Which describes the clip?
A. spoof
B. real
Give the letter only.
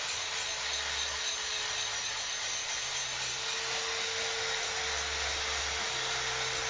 B